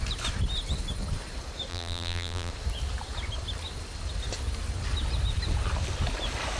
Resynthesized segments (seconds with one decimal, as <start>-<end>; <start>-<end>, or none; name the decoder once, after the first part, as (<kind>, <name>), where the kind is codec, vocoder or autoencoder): 1.7-2.5 (vocoder, BigVGAN v2)